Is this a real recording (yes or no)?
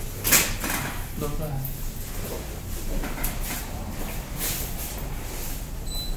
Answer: yes